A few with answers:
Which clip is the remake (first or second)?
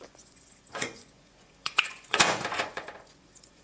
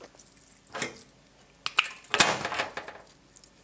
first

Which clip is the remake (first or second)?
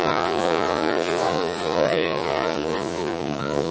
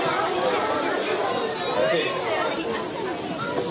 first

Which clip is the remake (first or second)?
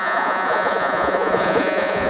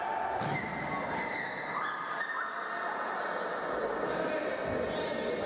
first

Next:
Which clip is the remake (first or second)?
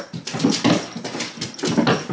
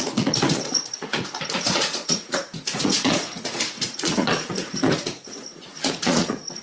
second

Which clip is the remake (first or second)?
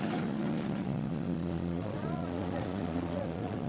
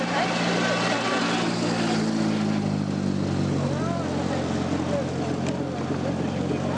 first